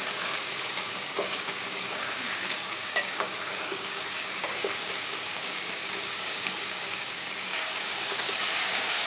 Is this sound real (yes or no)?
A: no